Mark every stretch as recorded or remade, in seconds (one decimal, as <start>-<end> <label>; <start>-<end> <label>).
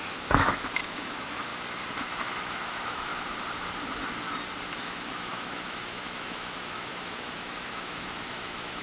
0.0-1.5 remade; 1.5-2.4 recorded; 2.4-3.1 remade; 3.1-4.7 recorded; 4.7-8.8 remade